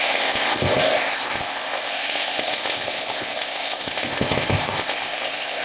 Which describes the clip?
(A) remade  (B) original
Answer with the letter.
A